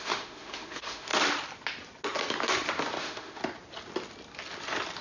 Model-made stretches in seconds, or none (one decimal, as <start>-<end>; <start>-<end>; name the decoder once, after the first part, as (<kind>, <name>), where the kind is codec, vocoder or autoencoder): 0.0-1.1 (autoencoder, DAC-VAE); 3.0-3.4